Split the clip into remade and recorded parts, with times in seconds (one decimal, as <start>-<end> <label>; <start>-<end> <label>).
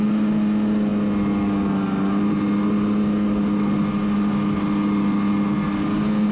0.0-6.3 recorded